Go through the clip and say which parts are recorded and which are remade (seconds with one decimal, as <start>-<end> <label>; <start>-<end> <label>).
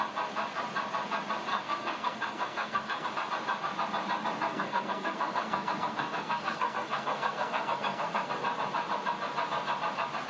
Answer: 0.0-1.5 recorded; 1.5-3.1 remade; 3.1-4.5 recorded; 4.5-8.3 remade; 8.3-10.3 recorded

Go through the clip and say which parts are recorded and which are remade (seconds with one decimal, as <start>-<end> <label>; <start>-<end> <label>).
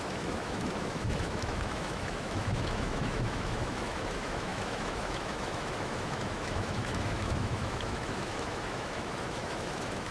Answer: 0.0-10.1 remade